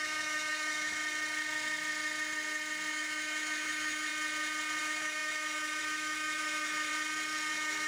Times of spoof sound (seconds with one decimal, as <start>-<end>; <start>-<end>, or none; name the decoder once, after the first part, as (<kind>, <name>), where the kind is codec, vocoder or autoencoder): 0.0-1.0 (autoencoder, DAC-VAE); 2.9-4.1; 4.8-6.9; 7.5-7.9